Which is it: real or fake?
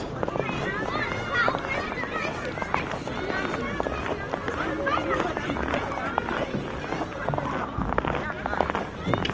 real